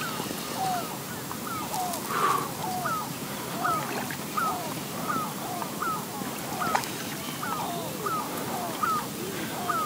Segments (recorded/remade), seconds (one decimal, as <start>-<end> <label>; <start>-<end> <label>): 0.0-2.6 recorded; 2.6-5.0 remade; 5.0-9.9 recorded